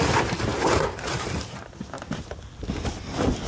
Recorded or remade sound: recorded